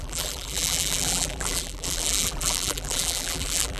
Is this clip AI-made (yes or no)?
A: yes